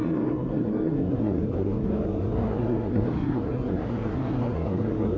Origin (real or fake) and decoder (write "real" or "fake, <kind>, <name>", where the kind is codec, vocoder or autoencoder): fake, codec, SNAC